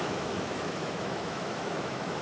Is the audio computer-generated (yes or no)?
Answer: yes